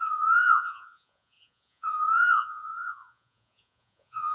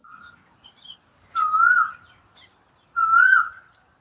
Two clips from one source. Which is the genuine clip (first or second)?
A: second